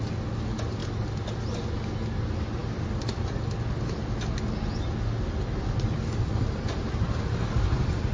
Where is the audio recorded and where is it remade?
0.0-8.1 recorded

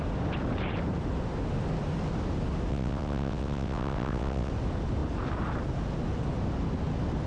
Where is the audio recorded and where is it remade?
0.0-2.7 recorded; 2.7-4.5 remade; 4.5-7.3 recorded

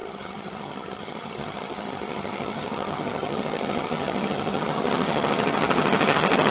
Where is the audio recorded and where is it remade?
0.0-6.5 remade